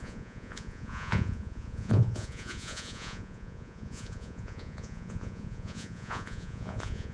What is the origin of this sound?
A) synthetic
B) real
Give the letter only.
A